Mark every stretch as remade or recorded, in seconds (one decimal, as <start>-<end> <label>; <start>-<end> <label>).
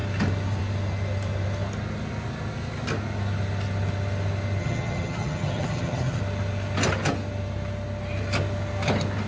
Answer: 0.0-4.6 recorded; 4.6-6.2 remade; 6.2-9.3 recorded